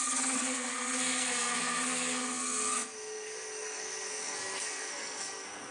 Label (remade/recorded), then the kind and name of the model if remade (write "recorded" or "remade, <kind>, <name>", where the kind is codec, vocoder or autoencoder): remade, codec, SNAC